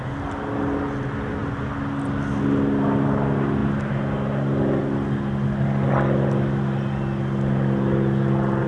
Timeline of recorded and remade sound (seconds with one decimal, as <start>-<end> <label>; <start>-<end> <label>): 0.0-8.7 recorded